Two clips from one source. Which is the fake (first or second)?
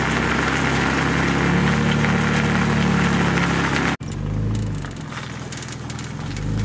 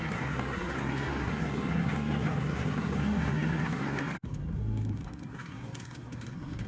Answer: second